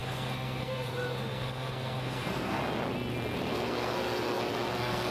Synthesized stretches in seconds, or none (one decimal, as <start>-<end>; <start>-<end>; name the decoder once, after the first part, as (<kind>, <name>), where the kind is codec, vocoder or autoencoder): 0.0-2.6 (codec, SNAC); 3.5-5.1